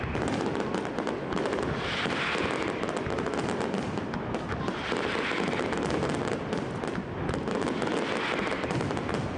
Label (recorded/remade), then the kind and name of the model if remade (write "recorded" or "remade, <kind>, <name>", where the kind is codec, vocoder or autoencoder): recorded